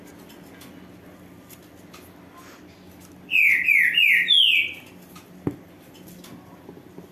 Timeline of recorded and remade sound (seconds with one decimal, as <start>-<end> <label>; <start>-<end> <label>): 0.0-7.1 recorded